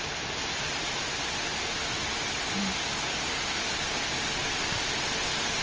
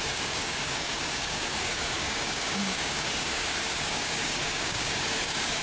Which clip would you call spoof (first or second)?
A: second